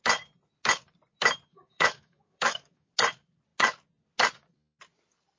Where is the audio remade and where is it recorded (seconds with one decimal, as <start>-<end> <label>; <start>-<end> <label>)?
0.0-1.5 recorded; 1.5-2.9 remade; 2.9-5.4 recorded

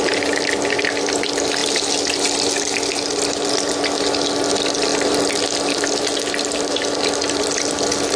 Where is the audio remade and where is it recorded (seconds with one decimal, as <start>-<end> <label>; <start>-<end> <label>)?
0.0-8.2 recorded

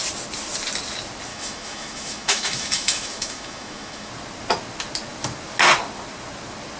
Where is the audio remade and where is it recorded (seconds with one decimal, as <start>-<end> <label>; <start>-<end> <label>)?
0.0-1.3 recorded; 1.3-4.1 remade; 4.1-6.8 recorded

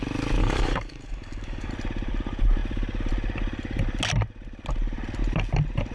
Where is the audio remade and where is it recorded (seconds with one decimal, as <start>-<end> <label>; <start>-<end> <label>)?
0.0-0.4 recorded; 0.4-1.7 remade; 1.7-5.9 recorded